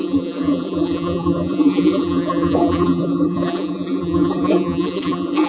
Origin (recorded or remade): remade